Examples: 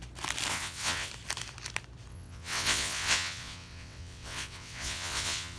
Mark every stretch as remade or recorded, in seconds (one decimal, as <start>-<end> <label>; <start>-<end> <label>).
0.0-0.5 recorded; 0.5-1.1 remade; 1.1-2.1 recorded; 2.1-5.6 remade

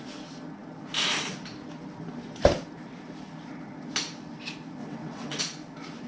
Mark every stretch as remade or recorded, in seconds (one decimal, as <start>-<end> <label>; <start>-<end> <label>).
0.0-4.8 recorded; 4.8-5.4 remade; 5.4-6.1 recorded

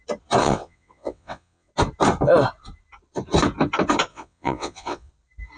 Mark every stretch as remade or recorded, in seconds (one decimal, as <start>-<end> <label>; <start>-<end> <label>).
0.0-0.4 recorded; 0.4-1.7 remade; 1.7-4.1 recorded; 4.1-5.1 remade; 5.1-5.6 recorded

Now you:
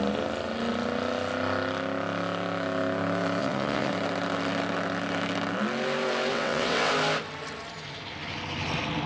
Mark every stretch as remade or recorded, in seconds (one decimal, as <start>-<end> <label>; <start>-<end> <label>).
0.0-3.4 recorded; 3.4-3.9 remade; 3.9-6.3 recorded; 6.3-6.9 remade; 6.9-9.1 recorded

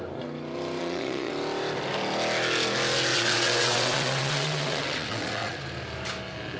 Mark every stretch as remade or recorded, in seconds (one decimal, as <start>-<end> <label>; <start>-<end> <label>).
0.0-0.8 recorded; 0.8-1.3 remade; 1.3-3.1 recorded; 3.1-5.6 remade; 5.6-6.6 recorded